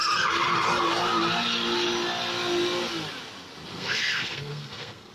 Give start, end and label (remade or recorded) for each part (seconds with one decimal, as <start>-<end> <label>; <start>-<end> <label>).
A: 0.0-3.7 recorded; 3.7-5.1 remade